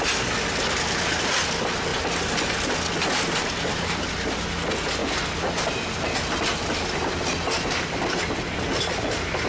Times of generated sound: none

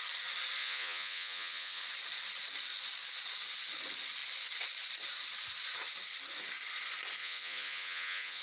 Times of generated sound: 0.6-1.8 (vocoder, Vocos); 7.2-8.4